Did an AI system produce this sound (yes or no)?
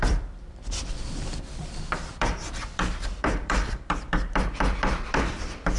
yes